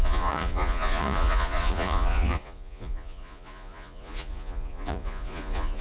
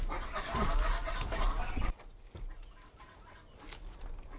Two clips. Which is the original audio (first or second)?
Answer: second